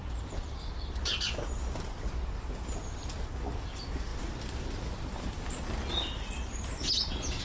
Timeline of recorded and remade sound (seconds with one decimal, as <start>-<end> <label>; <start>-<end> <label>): 0.0-1.1 remade; 1.1-7.4 recorded